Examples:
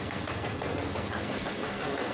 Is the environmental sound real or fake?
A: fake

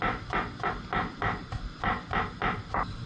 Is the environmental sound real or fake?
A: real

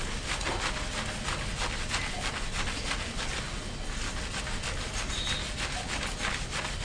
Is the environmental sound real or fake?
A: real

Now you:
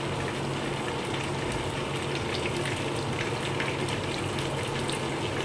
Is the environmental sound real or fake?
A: real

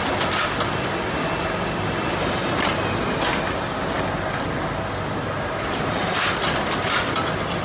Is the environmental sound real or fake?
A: real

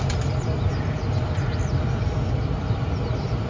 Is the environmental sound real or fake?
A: real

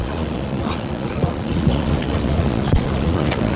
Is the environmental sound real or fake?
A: fake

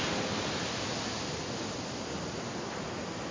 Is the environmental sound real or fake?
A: real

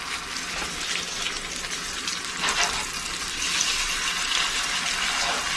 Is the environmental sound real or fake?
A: real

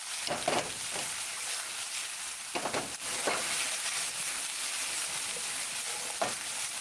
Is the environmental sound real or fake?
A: fake